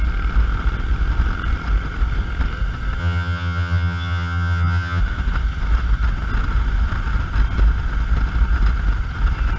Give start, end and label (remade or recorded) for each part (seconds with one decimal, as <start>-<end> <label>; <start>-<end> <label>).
0.0-3.0 recorded; 3.0-5.0 remade; 5.0-9.6 recorded

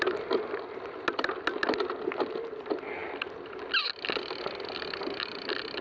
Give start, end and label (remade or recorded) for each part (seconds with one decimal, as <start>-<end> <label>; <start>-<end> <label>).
0.0-5.8 recorded

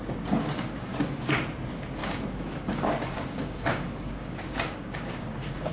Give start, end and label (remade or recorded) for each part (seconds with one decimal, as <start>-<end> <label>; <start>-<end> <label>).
0.0-0.4 recorded; 0.4-1.4 remade; 1.4-2.0 recorded; 2.0-5.7 remade

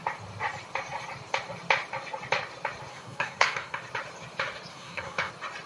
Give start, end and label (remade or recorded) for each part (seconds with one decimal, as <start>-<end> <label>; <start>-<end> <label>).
0.0-2.9 recorded; 2.9-3.8 remade; 3.8-4.7 recorded; 4.7-5.3 remade; 5.3-5.7 recorded

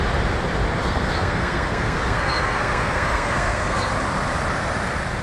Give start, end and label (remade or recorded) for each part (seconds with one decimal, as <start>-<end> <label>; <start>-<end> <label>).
0.0-0.8 recorded; 0.8-3.9 remade; 3.9-5.2 recorded

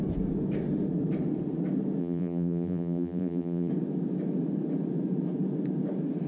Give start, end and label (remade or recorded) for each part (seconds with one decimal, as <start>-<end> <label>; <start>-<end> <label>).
0.0-2.0 recorded; 2.0-3.7 remade; 3.7-6.3 recorded

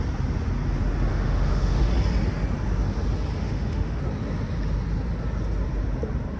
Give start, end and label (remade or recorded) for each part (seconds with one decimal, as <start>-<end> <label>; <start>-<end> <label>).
0.0-1.1 recorded; 1.1-1.9 remade; 1.9-3.4 recorded; 3.4-4.0 remade; 4.0-6.4 recorded

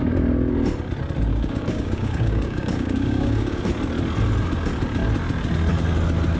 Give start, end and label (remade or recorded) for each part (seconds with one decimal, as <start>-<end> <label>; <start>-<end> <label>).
0.0-1.3 recorded; 1.3-3.6 remade; 3.6-6.4 recorded